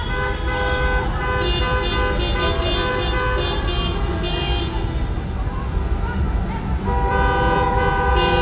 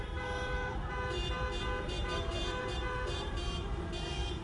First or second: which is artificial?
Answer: second